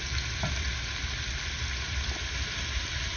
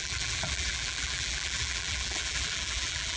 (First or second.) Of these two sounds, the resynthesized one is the second